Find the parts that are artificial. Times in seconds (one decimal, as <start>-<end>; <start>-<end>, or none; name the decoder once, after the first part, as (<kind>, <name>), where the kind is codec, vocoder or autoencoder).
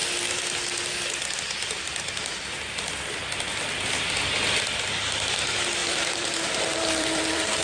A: 5.8-7.6 (vocoder, BigVGAN v2)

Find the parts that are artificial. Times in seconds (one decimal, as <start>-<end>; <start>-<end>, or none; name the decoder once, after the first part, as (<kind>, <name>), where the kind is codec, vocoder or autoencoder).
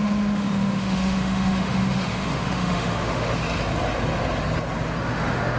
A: 0.0-3.4 (autoencoder, DAC-VAE); 5.0-5.6